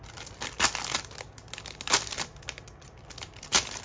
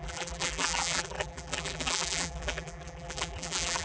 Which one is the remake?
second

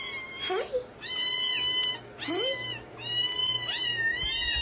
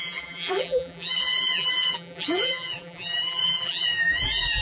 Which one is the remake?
second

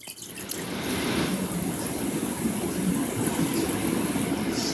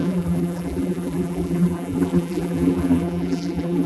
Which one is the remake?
second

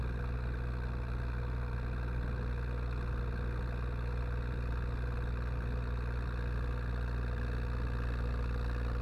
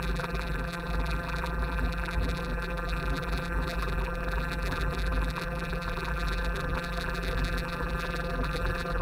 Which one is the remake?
second